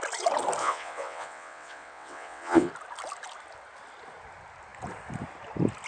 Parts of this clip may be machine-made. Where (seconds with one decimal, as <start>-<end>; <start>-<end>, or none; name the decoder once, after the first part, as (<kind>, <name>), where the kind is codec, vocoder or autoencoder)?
0.6-2.7 (vocoder, WaveNeXt)